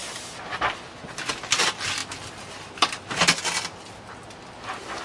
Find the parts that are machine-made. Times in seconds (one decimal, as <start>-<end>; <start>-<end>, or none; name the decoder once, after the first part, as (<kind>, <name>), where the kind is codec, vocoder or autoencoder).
none